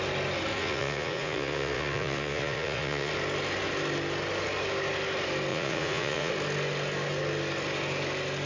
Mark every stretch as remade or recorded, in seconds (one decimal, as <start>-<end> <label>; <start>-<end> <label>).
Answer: 0.0-0.5 recorded; 0.5-3.1 remade; 3.1-5.5 recorded; 5.5-6.3 remade; 6.3-8.5 recorded